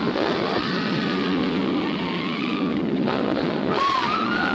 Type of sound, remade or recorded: remade